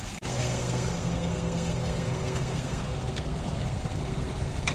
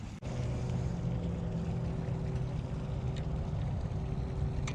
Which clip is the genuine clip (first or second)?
second